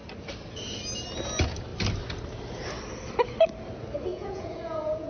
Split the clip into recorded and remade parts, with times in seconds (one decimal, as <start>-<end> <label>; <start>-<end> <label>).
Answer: 0.0-4.1 recorded; 4.1-5.1 remade